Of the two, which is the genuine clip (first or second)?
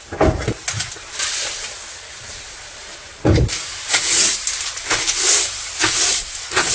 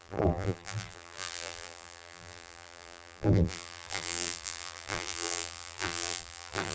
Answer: first